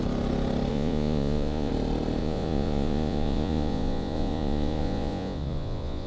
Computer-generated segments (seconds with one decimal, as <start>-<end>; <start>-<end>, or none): 0.7-1.7; 2.2-6.1